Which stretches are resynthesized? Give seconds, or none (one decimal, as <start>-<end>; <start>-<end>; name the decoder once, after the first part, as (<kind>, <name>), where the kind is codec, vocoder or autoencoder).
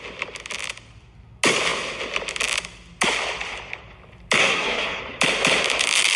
4.4-5.0 (codec, SNAC)